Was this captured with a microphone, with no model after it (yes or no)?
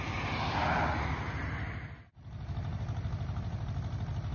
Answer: yes